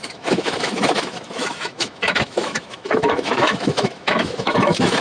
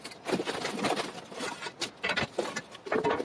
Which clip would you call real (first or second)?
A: second